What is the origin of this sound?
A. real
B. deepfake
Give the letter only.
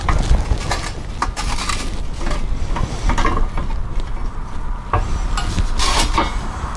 A